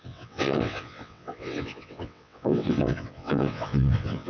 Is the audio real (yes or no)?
no